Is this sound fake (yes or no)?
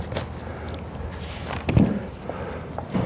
no